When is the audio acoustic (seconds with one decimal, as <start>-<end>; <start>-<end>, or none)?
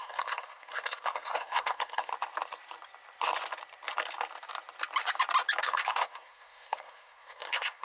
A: 2.1-5.6